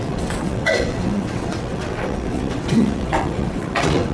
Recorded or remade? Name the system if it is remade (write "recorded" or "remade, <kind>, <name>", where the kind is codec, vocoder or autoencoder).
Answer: remade, vocoder, WaveNeXt